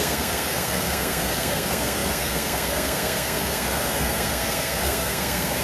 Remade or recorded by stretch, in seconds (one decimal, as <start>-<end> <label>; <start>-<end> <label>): 0.0-5.6 remade

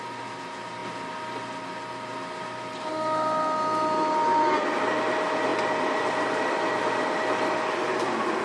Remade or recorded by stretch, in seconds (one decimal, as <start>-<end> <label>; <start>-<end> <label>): 0.0-5.5 recorded; 5.5-7.2 remade; 7.2-8.4 recorded

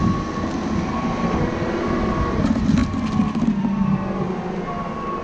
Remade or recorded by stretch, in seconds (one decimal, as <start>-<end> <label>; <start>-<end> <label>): 0.0-0.9 recorded; 0.9-1.4 remade; 1.4-5.2 recorded